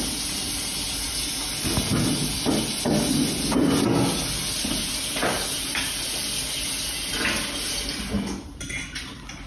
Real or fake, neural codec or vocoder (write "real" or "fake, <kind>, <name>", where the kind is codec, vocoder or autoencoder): real